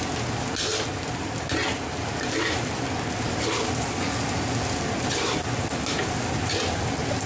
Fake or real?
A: real